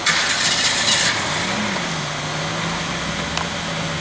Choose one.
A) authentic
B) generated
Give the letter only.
A